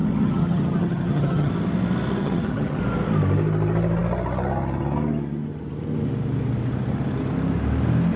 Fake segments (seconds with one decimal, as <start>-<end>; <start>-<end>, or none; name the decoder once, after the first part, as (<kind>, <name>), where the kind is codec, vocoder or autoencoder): 0.0-1.5 (vocoder, HiFi-GAN); 2.2-2.8